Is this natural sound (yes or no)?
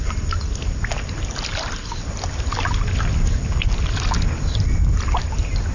yes